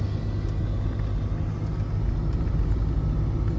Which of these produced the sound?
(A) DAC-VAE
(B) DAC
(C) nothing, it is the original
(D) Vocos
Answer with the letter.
C